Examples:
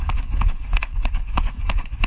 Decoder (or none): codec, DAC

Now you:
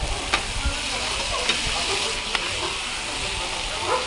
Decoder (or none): none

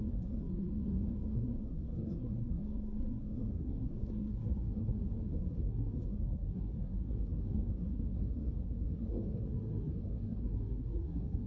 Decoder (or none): codec, SNAC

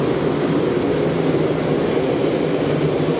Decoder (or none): none